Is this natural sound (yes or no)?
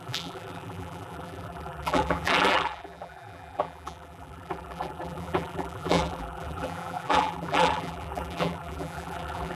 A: no